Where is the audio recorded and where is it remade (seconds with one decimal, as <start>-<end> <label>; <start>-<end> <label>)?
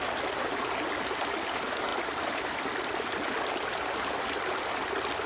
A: 0.0-5.3 recorded